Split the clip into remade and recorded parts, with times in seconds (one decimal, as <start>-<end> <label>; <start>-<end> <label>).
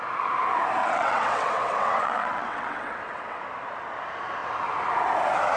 0.0-0.8 recorded; 0.8-3.4 remade; 3.4-5.6 recorded